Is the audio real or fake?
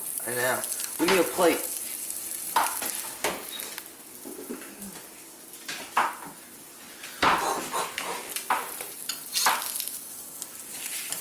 real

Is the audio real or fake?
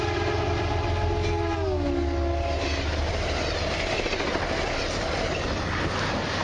real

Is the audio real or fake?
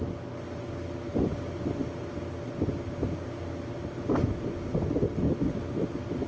real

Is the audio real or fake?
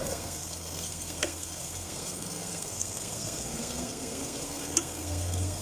fake